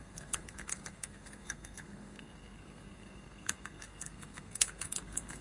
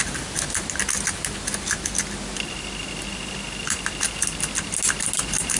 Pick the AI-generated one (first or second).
first